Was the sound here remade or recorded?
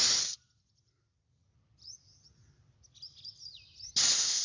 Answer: recorded